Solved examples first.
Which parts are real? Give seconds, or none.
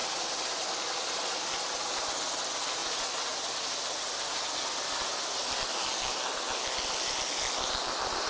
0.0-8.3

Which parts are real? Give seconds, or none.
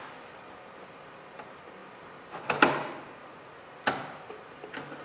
0.0-3.2; 3.8-5.0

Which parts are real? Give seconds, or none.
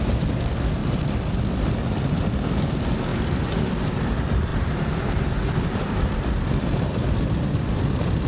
0.0-0.8; 1.8-3.1; 4.0-4.5; 7.2-8.3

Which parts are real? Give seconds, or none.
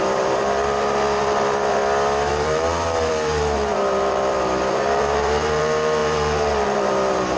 1.8-2.3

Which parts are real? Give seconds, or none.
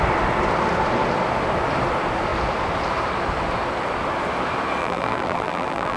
0.0-4.8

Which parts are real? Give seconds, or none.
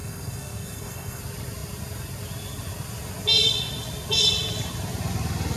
1.2-5.6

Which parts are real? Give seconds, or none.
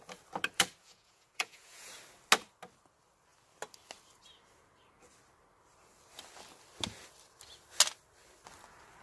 0.0-0.8; 1.9-9.0